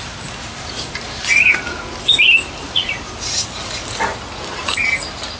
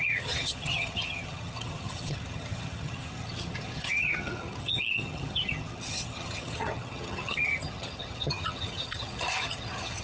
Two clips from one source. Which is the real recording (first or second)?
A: first